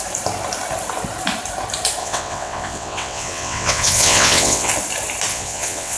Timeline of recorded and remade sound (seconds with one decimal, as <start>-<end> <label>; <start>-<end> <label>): 0.0-2.0 recorded; 2.0-4.7 remade; 4.7-5.3 recorded; 5.3-6.0 remade